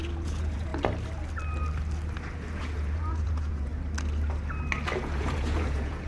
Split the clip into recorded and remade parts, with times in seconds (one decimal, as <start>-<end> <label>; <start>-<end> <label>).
0.0-0.7 remade; 0.7-2.6 recorded; 2.6-3.7 remade; 3.7-5.0 recorded; 5.0-6.1 remade